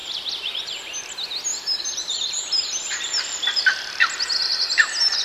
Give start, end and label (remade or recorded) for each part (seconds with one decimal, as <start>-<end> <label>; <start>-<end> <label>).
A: 0.0-1.5 recorded; 1.5-3.6 remade; 3.6-5.2 recorded

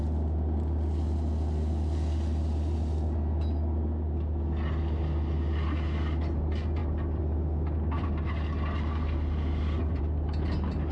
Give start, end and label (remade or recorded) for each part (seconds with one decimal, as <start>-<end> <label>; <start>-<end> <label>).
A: 0.0-10.9 recorded

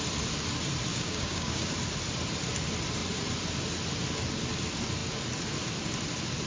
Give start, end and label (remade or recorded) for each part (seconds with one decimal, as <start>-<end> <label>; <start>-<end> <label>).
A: 0.0-0.9 recorded; 0.9-1.7 remade; 1.7-6.5 recorded